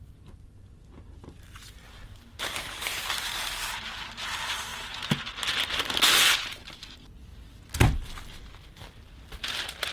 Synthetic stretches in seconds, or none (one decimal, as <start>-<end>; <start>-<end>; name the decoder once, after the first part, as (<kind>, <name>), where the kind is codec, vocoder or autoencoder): none